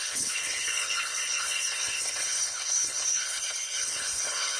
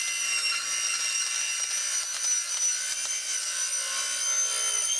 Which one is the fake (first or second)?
first